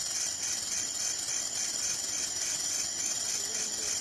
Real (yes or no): yes